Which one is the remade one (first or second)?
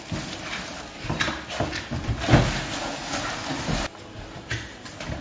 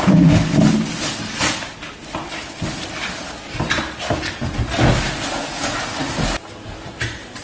first